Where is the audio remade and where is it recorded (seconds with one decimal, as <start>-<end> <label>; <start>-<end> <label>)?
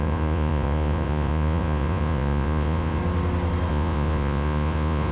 0.0-3.0 remade; 3.0-3.7 recorded; 3.7-5.1 remade